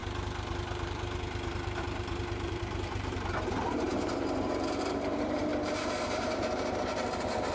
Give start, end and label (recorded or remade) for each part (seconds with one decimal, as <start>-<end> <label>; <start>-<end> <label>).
0.0-5.5 remade; 5.5-6.0 recorded; 6.0-7.5 remade